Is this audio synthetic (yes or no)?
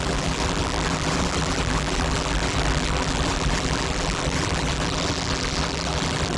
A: yes